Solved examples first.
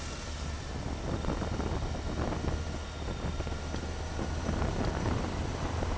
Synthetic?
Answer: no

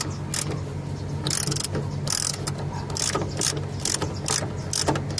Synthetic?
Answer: no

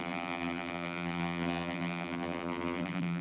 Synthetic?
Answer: yes